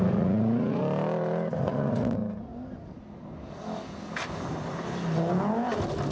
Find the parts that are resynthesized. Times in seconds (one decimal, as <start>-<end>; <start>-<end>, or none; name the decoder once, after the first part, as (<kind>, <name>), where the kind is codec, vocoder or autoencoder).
0.0-0.8 (vocoder, Vocos); 1.6-2.2